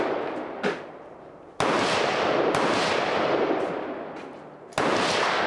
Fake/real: real